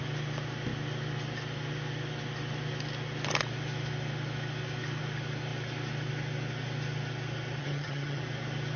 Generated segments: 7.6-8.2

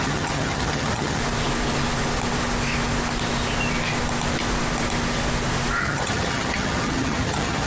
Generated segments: 0.0-1.2; 5.8-7.7